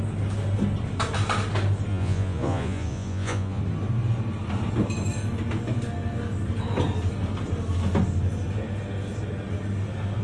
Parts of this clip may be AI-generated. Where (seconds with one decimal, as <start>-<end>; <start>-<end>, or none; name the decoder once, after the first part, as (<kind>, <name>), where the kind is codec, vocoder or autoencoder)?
1.9-3.6 (vocoder, Vocos)